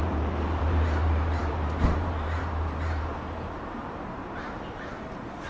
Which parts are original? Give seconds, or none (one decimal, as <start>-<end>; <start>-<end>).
none